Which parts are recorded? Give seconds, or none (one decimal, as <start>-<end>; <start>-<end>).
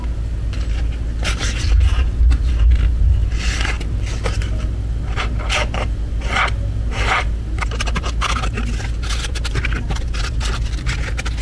0.0-11.4